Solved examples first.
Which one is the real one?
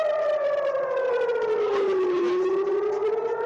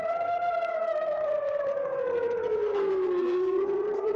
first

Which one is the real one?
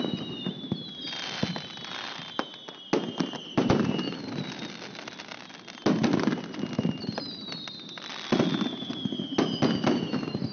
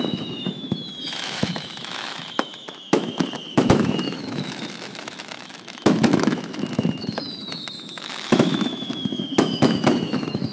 first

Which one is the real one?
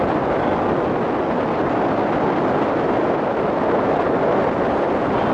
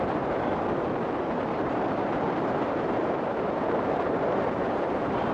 first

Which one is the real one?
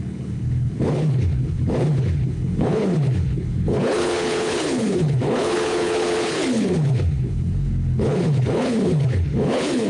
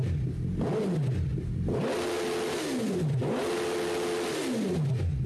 second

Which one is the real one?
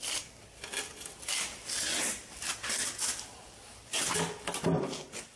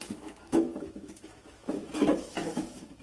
first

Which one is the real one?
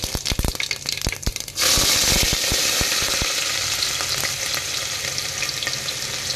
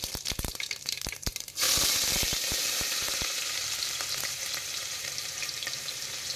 first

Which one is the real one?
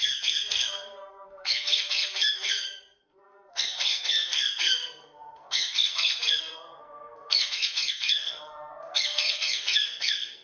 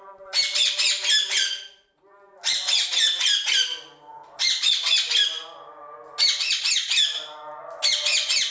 second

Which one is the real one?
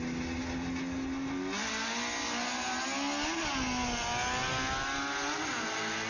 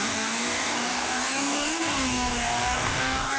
first